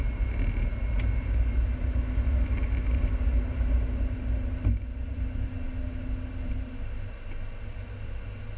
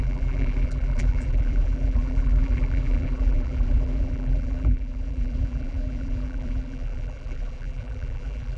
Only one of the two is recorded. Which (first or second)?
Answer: first